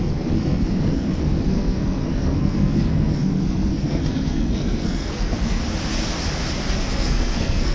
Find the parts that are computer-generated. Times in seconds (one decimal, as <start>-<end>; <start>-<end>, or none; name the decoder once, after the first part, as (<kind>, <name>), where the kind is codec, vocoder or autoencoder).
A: 0.0-5.6 (codec, SNAC); 6.7-7.7